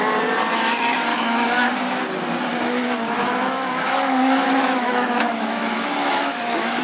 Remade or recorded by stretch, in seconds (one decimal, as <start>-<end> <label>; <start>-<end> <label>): 0.0-1.1 recorded; 1.1-1.7 remade; 1.7-2.5 recorded; 2.5-6.8 remade